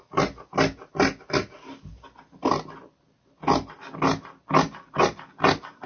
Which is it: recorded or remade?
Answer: recorded